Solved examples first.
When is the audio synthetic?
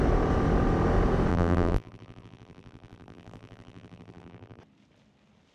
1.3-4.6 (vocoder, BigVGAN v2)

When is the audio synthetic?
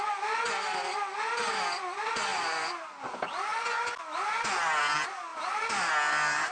2.3-3.0 (vocoder, BigVGAN v2)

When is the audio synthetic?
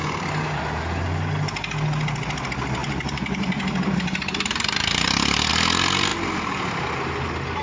2.8-5.5 (vocoder, BigVGAN v2); 6.1-6.9